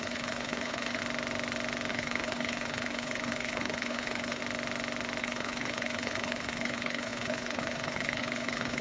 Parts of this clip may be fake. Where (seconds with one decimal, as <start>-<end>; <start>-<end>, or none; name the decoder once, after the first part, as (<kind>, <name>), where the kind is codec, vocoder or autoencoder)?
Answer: 0.0-1.0 (codec, HILCodec); 1.9-4.4; 5.2-8.8